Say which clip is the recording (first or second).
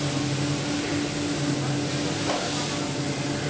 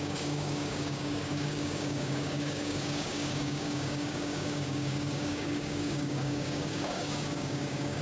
first